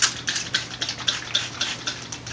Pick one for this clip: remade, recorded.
recorded